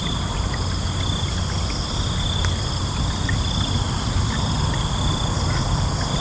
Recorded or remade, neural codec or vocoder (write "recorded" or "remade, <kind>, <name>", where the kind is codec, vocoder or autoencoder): recorded